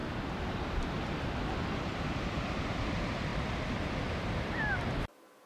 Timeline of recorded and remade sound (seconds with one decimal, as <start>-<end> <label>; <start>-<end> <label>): 0.0-1.4 remade; 1.4-3.3 recorded; 3.3-3.9 remade; 3.9-5.5 recorded